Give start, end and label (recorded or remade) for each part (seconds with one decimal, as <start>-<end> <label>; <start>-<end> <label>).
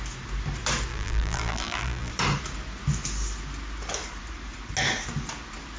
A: 0.0-0.9 recorded; 0.9-2.1 remade; 2.1-5.8 recorded